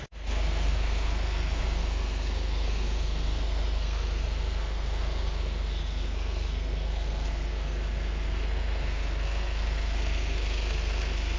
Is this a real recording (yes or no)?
no